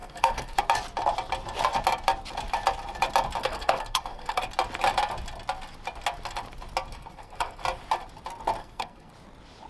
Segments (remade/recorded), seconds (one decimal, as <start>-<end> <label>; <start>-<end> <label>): 0.0-0.6 remade; 0.6-3.4 recorded; 3.4-4.4 remade; 4.4-6.9 recorded; 6.9-7.6 remade; 7.6-8.6 recorded; 8.6-9.1 remade; 9.1-9.7 recorded